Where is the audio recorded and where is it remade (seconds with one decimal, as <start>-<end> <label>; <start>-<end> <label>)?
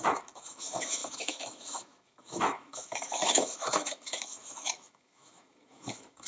0.0-6.3 remade